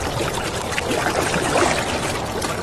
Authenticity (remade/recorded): recorded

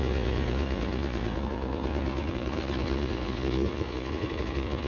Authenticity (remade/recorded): remade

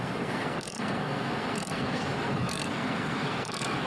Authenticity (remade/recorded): remade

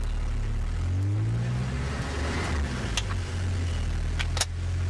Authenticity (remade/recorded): recorded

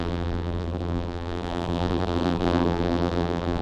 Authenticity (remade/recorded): remade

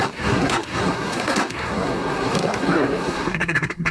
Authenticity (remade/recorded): remade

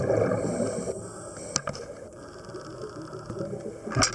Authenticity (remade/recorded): recorded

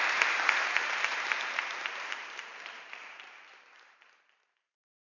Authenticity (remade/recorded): remade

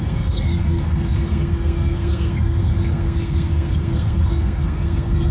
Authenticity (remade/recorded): remade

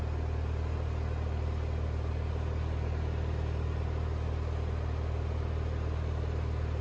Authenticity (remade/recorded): recorded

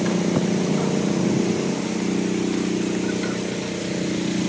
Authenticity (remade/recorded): recorded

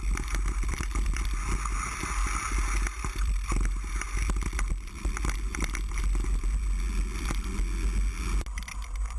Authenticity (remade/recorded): recorded